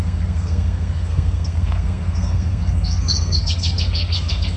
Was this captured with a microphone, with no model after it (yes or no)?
no